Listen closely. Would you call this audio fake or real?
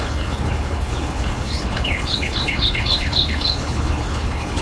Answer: fake